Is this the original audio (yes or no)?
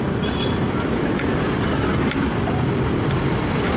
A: yes